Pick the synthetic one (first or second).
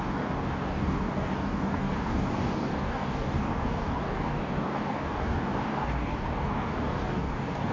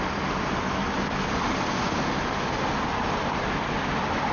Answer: first